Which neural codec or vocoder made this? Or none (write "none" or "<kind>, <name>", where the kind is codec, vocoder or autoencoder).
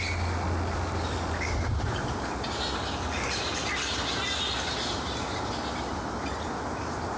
none